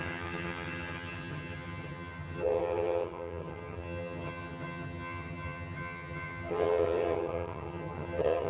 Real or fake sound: fake